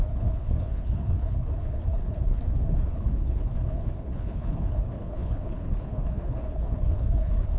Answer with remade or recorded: remade